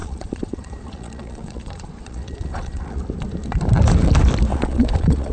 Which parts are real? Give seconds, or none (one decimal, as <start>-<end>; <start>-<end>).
3.0-4.5

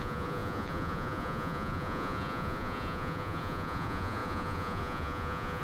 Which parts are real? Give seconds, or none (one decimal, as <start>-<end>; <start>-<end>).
none

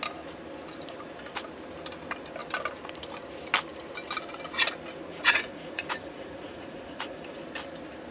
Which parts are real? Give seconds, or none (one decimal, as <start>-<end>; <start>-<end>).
0.0-5.1; 7.4-8.1

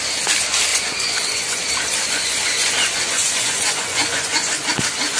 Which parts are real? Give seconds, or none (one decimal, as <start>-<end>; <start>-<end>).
0.0-0.7; 1.6-2.0; 4.7-5.2

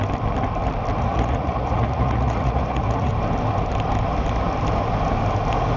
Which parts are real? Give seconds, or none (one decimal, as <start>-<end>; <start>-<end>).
0.0-1.0; 3.1-5.8

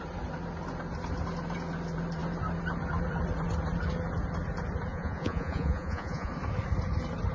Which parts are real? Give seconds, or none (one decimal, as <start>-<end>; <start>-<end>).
0.0-4.9; 6.3-7.3